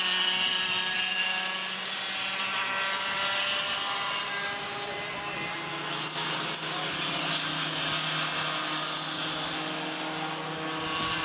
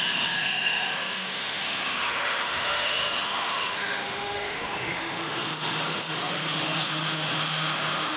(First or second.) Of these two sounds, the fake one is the second